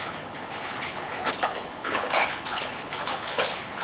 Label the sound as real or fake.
fake